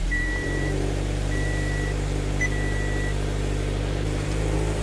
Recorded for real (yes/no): no